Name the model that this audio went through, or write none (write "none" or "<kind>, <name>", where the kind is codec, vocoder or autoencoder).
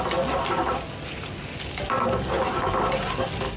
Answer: none